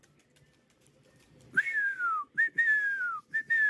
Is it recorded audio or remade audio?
recorded